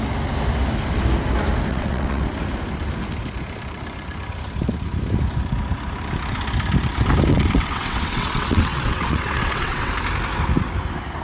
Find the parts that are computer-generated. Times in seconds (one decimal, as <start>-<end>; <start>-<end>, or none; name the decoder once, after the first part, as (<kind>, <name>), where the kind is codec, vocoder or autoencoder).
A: 1.7-2.2 (vocoder, WaveNeXt); 7.3-9.9